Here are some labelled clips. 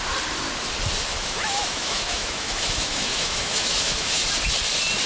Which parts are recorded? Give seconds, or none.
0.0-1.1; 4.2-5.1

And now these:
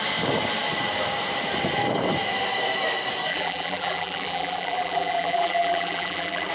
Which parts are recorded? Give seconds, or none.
0.0-3.3

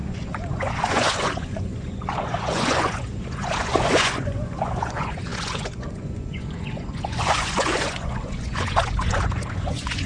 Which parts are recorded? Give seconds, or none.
none

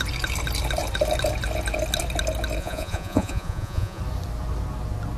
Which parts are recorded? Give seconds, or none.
0.0-2.6; 4.0-5.2

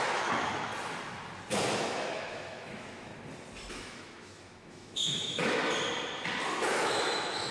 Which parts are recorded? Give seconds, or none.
0.7-1.8; 3.1-3.7; 5.6-6.7

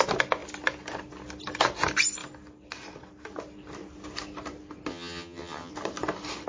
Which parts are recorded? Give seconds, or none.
0.0-4.9; 5.7-6.5